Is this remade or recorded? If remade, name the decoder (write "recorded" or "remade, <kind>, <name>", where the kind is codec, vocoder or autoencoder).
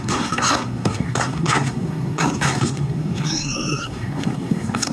remade, codec, SNAC